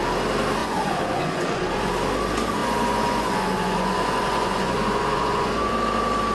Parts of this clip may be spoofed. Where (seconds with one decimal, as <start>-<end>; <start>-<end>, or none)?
0.6-1.9; 2.6-5.7